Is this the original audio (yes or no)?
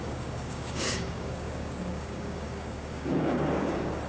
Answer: no